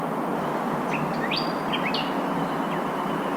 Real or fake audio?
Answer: real